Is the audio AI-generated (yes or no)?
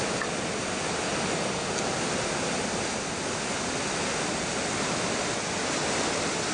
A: no